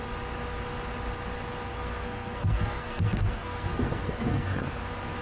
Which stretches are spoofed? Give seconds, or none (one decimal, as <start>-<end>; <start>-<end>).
1.7-4.8